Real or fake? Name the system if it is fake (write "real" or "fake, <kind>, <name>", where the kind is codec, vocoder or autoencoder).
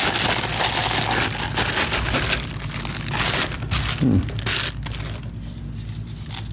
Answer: real